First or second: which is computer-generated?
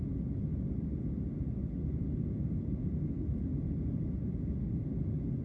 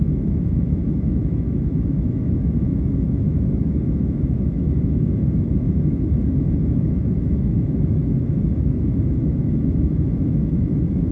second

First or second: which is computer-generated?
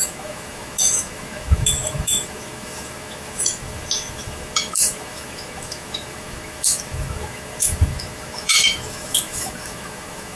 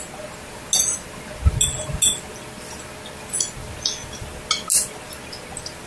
first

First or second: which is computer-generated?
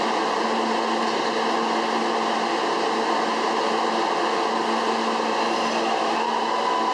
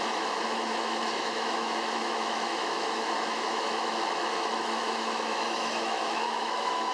second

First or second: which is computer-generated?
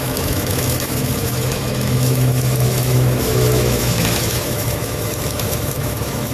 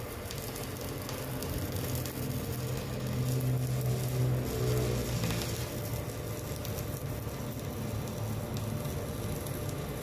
first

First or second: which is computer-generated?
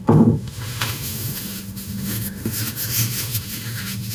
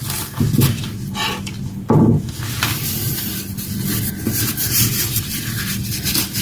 first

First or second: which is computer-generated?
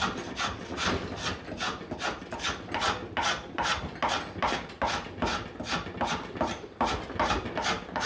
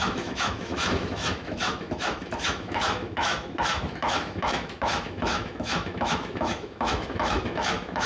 second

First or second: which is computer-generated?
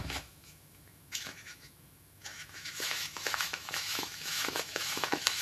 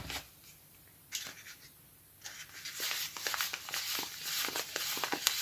first